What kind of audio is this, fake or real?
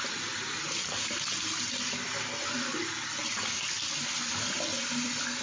real